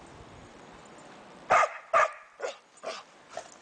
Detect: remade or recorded recorded